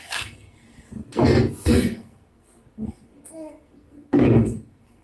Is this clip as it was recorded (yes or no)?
no